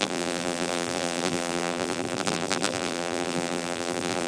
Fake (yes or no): yes